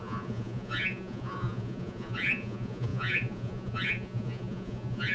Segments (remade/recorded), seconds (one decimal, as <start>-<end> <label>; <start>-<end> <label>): 0.0-5.1 remade